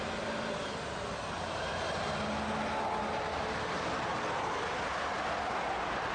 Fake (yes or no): no